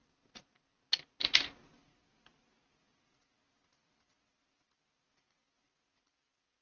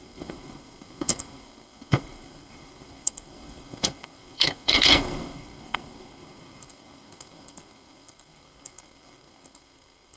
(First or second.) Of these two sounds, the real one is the first